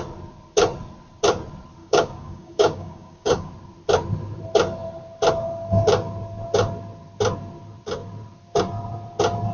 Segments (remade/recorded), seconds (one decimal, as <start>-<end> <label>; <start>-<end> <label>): 0.0-1.8 recorded; 1.8-3.5 remade; 3.5-9.5 recorded